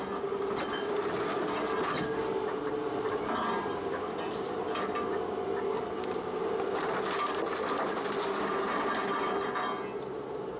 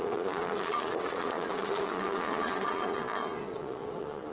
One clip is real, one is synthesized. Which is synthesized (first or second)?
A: second